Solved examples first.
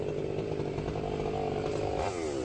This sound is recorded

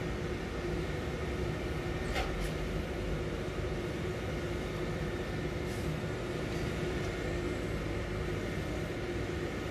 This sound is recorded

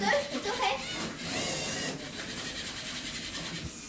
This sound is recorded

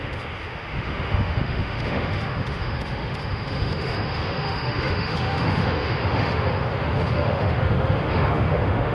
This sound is remade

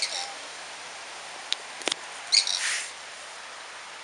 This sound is recorded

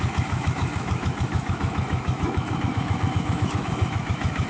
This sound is remade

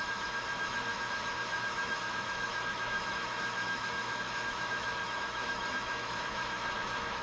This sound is remade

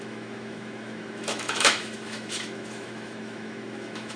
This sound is remade